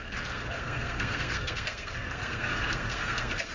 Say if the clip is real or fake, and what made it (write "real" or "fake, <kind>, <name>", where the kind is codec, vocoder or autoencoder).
fake, codec, SNAC